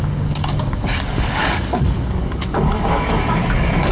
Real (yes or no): no